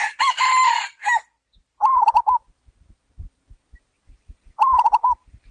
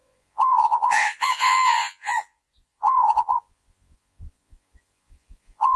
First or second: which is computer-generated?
second